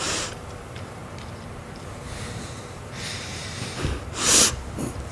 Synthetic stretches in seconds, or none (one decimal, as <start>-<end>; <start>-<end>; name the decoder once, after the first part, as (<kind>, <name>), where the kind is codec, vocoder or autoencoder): 0.0-1.0 (vocoder, BigVGAN v2); 2.4-3.4